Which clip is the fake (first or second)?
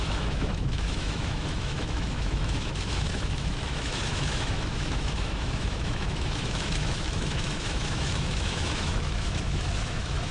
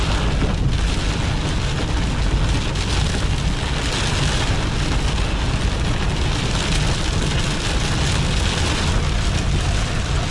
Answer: first